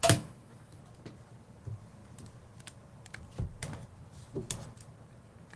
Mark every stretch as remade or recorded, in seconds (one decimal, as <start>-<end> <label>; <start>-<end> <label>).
0.0-0.8 remade; 0.8-5.6 recorded